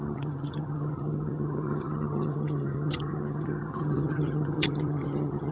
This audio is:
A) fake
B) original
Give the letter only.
A